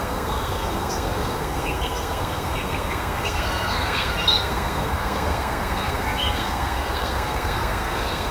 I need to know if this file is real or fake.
fake